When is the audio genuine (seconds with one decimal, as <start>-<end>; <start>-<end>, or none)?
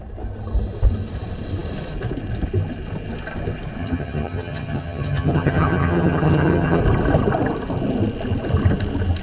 0.0-3.8; 6.8-9.2